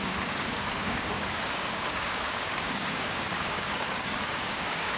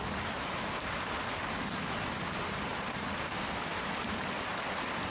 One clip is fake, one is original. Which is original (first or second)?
second